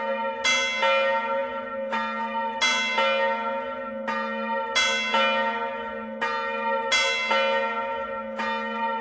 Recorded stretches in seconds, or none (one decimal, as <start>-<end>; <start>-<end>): 0.0-9.0